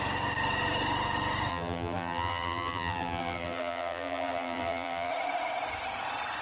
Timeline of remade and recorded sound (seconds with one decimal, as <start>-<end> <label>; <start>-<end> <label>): 0.0-1.5 recorded; 1.5-5.1 remade; 5.1-6.4 recorded